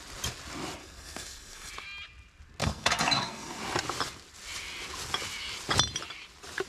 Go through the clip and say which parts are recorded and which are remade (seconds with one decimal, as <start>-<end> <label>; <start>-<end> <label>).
0.0-0.8 recorded; 0.8-1.7 remade; 1.7-2.6 recorded; 2.6-3.6 remade; 3.6-6.7 recorded